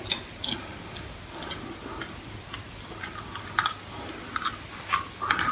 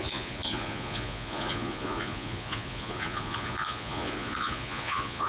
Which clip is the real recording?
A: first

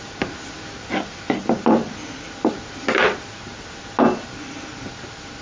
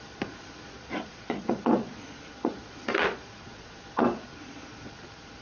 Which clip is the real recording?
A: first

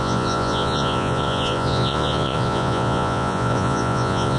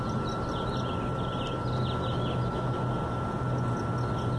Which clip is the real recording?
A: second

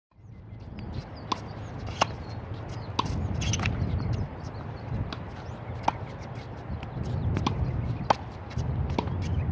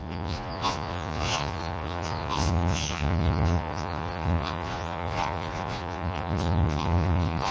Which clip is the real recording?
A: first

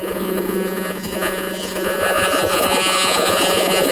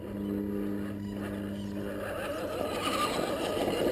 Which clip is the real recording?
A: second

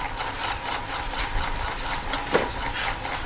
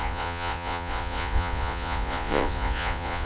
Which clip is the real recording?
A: first